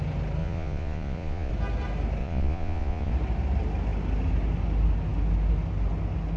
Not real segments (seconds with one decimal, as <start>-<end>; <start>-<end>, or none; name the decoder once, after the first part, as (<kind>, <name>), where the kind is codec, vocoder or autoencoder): 0.4-1.5 (vocoder, Vocos); 2.2-3.1